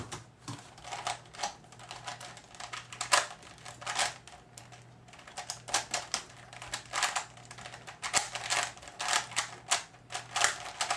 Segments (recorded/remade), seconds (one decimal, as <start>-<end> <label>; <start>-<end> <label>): 0.0-11.0 recorded